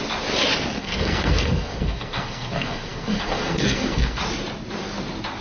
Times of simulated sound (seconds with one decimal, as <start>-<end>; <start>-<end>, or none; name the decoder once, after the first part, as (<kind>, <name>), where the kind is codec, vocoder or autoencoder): 0.8-4.2 (codec, SNAC)

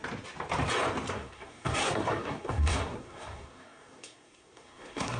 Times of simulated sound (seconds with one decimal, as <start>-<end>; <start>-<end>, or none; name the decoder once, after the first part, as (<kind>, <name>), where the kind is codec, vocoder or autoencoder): 1.1-5.2 (codec, SNAC)

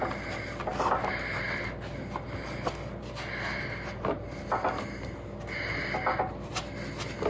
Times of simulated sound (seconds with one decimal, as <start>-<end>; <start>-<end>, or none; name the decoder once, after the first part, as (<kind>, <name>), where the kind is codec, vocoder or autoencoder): none

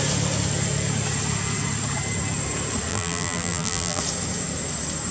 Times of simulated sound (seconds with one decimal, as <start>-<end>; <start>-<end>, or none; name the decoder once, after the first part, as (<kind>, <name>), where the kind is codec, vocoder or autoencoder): 2.9-4.0 (vocoder, BigVGAN v2)

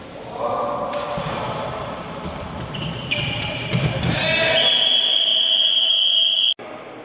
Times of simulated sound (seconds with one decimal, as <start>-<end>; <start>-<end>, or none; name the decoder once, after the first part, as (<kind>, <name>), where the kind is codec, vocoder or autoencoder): 1.2-4.2 (vocoder, BigVGAN v2)

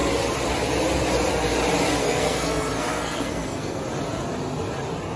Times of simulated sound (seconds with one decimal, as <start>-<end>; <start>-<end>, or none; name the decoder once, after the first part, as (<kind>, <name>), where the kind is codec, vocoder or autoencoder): 2.0-3.8 (codec, SNAC)